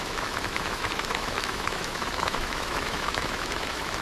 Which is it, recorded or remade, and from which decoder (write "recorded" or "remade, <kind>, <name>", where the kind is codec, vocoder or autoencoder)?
remade, autoencoder, DAC-VAE